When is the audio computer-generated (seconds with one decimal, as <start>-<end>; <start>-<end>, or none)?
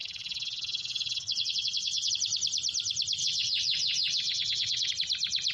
0.0-2.1; 3.2-4.9